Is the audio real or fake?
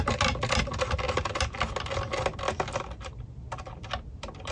real